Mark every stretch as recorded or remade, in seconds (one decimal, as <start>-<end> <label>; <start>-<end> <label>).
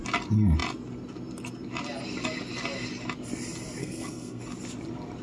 0.0-3.8 recorded; 3.8-4.4 remade; 4.4-5.2 recorded